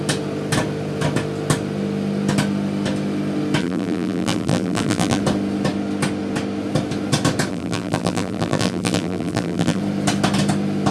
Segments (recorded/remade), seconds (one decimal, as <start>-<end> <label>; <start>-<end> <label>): 0.0-3.6 recorded; 3.6-5.2 remade; 5.2-7.5 recorded; 7.5-9.8 remade; 9.8-10.9 recorded

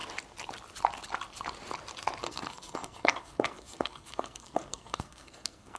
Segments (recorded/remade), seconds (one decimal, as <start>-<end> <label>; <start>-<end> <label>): 0.0-2.2 recorded; 2.2-5.8 remade

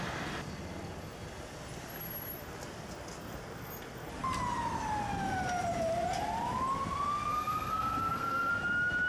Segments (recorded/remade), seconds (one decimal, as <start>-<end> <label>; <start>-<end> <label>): 0.0-7.3 recorded; 7.3-8.5 remade; 8.5-9.1 recorded

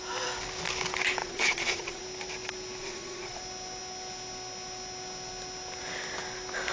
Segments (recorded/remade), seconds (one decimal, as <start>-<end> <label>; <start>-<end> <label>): 0.0-1.2 recorded; 1.2-2.0 remade; 2.0-2.8 recorded; 2.8-3.4 remade; 3.4-6.7 recorded

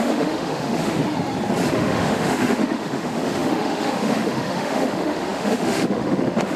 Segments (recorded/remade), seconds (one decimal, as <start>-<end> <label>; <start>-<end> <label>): 0.0-1.0 remade; 1.0-1.7 recorded; 1.7-6.6 remade

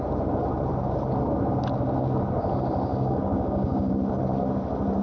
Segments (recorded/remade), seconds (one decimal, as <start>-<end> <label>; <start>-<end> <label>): 0.0-2.9 recorded; 2.9-3.9 remade; 3.9-5.0 recorded